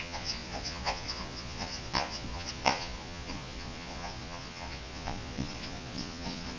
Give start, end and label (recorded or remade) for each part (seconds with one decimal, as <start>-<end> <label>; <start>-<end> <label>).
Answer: 0.0-6.6 remade